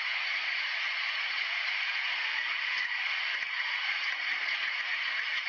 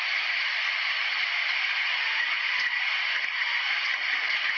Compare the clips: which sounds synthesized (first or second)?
first